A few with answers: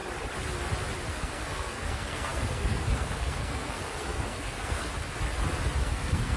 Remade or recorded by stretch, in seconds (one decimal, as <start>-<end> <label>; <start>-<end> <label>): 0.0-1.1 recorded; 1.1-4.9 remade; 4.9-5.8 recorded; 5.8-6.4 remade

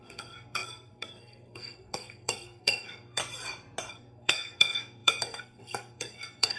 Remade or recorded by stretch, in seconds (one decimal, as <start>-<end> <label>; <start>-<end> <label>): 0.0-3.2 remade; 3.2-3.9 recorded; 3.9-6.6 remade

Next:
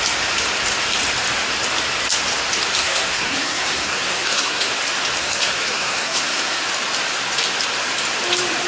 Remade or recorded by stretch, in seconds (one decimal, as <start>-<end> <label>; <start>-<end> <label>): 0.0-2.8 recorded; 2.8-4.7 remade; 4.7-5.2 recorded; 5.2-6.6 remade; 6.6-8.7 recorded